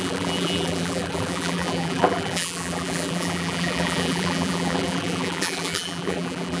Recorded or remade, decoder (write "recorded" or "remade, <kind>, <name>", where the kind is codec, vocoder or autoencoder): remade, vocoder, BigVGAN v2